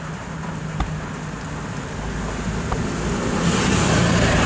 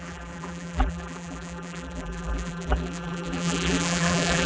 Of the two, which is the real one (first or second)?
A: first